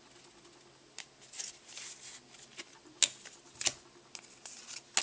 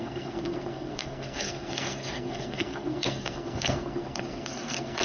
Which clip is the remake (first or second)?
second